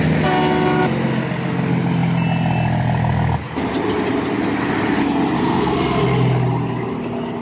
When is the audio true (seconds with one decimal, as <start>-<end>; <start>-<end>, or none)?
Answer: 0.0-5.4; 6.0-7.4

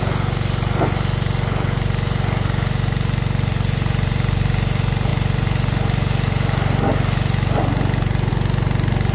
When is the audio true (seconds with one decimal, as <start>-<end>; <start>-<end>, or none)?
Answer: 0.0-9.1

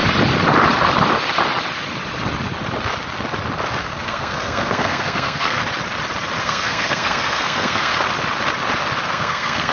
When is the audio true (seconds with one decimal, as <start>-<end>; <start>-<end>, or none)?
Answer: 0.0-3.8; 5.6-6.4; 7.9-9.1

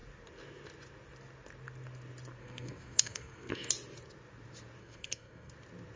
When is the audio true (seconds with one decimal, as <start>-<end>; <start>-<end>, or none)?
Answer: 0.0-2.4; 3.7-4.8; 5.5-6.0

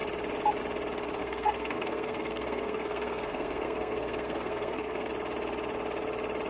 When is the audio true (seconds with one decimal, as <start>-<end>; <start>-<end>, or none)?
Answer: 0.0-1.2; 5.1-6.5

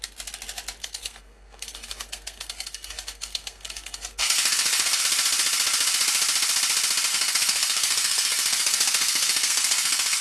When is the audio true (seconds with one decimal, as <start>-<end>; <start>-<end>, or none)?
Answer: 0.0-0.8; 5.0-7.1